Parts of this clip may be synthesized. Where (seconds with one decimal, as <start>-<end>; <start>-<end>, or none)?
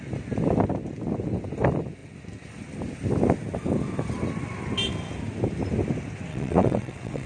6.3-7.3